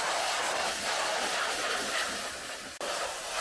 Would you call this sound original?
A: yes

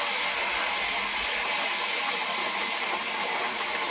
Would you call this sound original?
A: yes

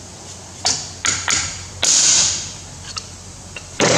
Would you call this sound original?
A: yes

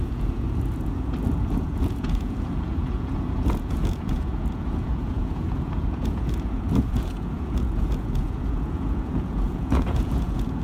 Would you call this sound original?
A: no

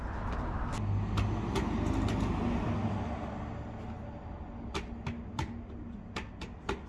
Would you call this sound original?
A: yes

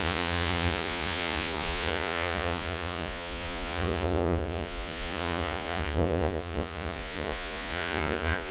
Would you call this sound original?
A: no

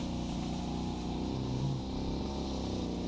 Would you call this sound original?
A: yes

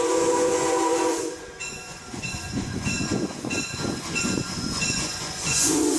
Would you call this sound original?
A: no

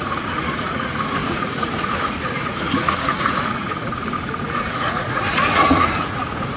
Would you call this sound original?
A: no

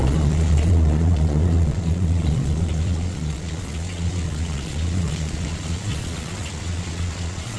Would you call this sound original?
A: no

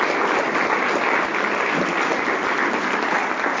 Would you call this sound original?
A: yes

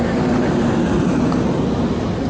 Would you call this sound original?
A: yes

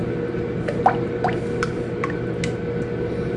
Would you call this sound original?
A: yes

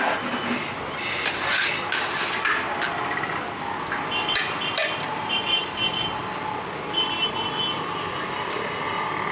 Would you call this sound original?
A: yes